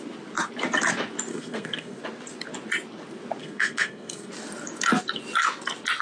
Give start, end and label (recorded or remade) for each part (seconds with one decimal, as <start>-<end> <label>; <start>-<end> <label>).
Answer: 0.0-1.3 recorded; 1.3-2.0 remade; 2.0-3.4 recorded; 3.4-4.3 remade; 4.3-6.0 recorded

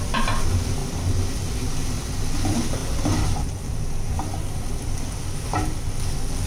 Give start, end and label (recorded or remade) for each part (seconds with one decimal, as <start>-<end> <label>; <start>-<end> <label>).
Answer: 0.0-6.5 recorded

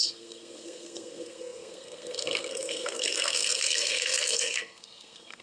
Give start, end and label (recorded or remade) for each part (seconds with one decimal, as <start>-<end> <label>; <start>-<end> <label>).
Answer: 0.0-5.4 remade

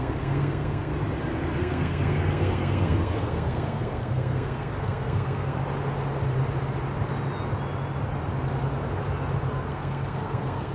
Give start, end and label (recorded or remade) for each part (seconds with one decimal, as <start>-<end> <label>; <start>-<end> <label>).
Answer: 0.0-0.9 remade; 0.9-1.6 recorded; 1.6-5.6 remade; 5.6-9.7 recorded; 9.7-10.7 remade

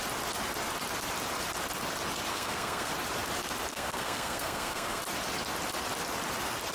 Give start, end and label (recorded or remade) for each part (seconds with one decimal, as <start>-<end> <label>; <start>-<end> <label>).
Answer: 0.0-2.3 recorded; 2.3-2.9 remade; 2.9-3.7 recorded; 3.7-5.0 remade; 5.0-6.7 recorded

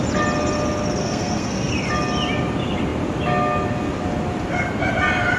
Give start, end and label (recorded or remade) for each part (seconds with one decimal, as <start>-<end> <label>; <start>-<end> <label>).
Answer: 0.0-1.0 recorded; 1.0-1.7 remade; 1.7-5.4 recorded

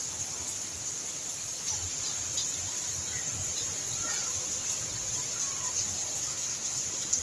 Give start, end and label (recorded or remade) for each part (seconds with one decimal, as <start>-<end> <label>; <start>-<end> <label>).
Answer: 0.0-6.3 recorded; 6.3-6.8 remade; 6.8-7.2 recorded

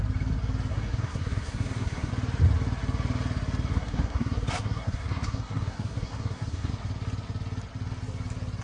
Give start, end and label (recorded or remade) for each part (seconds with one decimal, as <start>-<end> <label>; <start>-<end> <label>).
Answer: 0.0-0.7 recorded; 0.7-2.1 remade; 2.1-3.7 recorded; 3.7-6.7 remade; 6.7-8.6 recorded